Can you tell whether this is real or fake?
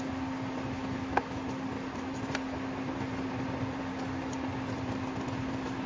real